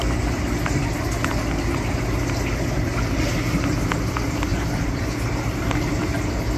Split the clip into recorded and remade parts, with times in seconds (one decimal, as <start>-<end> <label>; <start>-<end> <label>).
0.0-4.5 recorded; 4.5-6.0 remade; 6.0-6.6 recorded